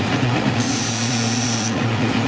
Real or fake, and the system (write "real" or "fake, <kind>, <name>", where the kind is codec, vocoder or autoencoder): fake, vocoder, Vocos